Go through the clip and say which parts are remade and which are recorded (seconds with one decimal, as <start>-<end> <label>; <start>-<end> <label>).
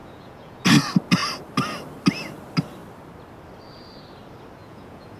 0.0-0.6 remade; 0.6-4.6 recorded; 4.6-5.2 remade